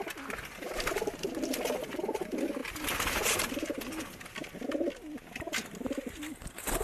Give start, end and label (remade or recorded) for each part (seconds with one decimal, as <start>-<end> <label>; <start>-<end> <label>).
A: 0.0-6.8 recorded